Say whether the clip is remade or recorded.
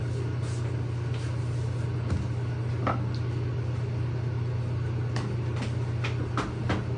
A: recorded